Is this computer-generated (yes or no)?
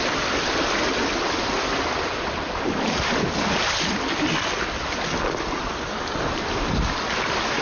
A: no